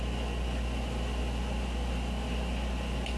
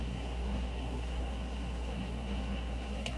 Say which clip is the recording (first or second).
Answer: first